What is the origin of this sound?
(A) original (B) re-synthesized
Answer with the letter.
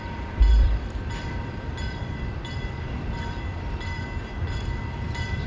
B